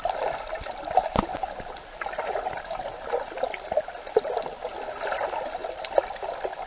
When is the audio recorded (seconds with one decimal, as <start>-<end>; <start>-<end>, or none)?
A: 0.0-6.7